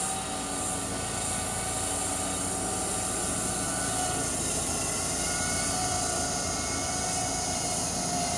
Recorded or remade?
recorded